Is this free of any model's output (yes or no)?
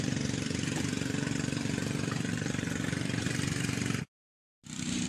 no